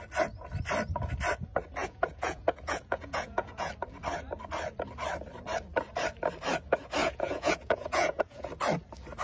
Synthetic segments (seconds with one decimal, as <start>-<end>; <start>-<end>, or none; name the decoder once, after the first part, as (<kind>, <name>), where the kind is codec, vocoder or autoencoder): 1.8-3.7 (vocoder, Vocos); 7.0-8.5